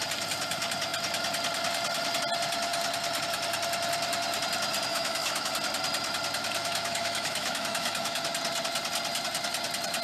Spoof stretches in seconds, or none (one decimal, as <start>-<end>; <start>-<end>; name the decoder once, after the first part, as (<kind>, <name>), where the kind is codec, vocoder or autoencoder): 4.9-5.5 (autoencoder, DAC-VAE); 6.6-8.2